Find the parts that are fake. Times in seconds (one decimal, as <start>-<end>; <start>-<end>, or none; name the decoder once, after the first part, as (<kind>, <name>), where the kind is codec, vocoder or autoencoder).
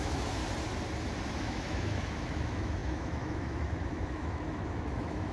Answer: 0.0-0.4 (autoencoder, DAC-VAE); 1.4-5.3